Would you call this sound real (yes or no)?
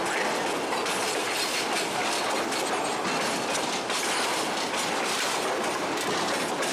yes